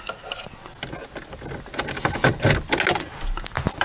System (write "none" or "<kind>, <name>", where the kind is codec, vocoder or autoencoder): none